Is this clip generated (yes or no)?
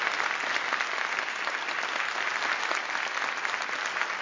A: no